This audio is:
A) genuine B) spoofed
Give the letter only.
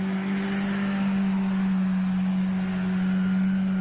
A